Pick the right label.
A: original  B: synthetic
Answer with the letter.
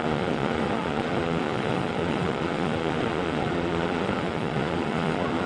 B